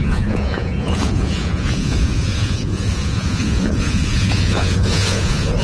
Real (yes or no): no